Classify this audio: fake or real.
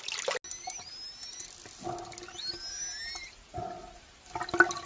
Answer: real